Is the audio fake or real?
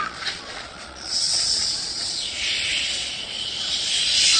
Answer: fake